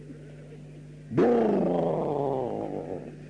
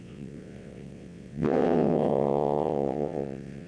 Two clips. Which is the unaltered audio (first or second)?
first